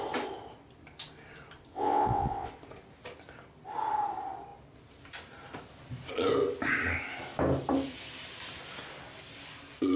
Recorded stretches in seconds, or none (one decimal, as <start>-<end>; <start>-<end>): 0.0-1.7; 2.5-10.0